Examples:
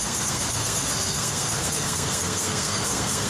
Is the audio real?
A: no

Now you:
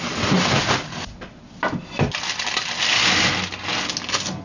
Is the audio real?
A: yes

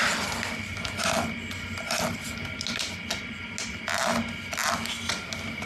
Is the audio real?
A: yes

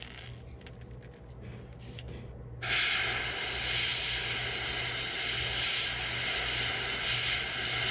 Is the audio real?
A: yes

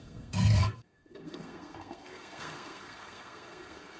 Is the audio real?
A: no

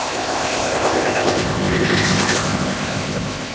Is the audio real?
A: no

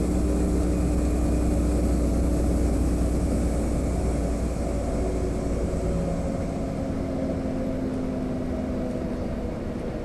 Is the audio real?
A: yes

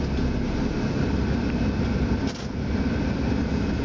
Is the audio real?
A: yes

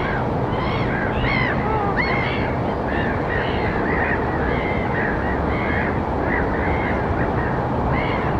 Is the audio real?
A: yes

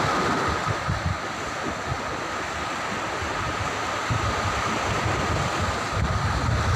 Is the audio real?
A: yes